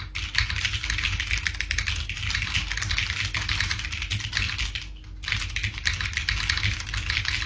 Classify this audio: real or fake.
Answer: real